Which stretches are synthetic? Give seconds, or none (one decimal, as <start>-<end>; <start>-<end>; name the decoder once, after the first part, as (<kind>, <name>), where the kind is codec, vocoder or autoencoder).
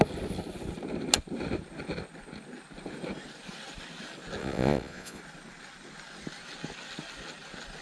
4.4-5.2 (vocoder, Vocos)